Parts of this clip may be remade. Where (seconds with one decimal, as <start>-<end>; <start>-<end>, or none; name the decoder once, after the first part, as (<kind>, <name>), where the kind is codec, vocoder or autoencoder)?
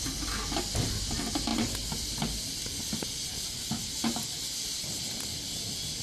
none